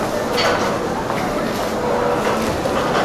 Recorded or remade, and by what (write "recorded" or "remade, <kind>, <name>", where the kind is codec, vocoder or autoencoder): recorded